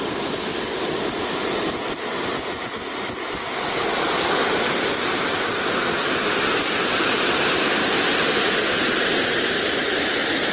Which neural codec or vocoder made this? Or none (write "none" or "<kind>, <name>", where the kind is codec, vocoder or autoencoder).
none